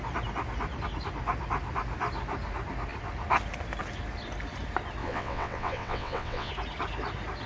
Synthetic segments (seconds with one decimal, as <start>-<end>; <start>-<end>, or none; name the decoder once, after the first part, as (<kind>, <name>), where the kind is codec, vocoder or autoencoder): 5.0-6.5 (vocoder, WaveNeXt)